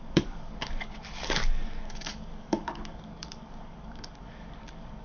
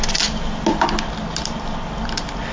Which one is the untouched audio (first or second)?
second